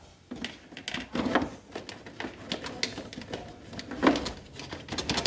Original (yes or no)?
yes